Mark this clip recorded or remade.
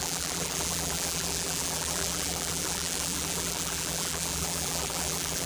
remade